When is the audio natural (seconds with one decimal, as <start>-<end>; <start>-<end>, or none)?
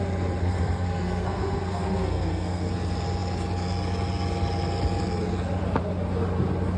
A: 0.0-0.4; 2.7-6.8